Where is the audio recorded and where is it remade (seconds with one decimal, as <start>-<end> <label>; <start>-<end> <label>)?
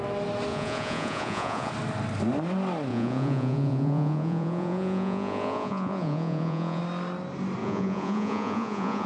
0.0-0.5 recorded; 0.5-1.7 remade; 1.7-2.9 recorded; 2.9-6.8 remade; 6.8-7.6 recorded; 7.6-9.1 remade